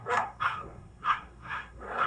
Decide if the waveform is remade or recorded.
remade